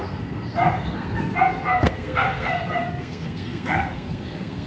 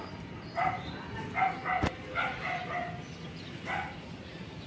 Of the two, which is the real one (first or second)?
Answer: second